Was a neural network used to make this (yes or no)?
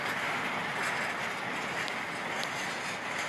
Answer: no